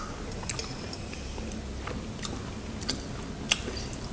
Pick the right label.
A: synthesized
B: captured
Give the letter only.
B